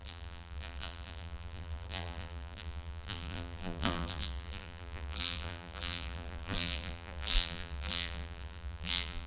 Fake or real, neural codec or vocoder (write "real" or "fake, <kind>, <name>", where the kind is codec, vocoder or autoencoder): fake, vocoder, BigVGAN v2